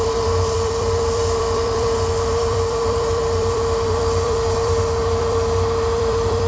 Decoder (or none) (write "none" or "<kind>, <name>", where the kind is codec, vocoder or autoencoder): vocoder, BigVGAN v2